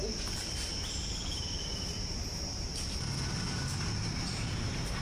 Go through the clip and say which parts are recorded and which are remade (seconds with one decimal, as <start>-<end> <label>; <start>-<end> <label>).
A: 0.0-2.7 remade; 2.7-3.5 recorded; 3.5-5.0 remade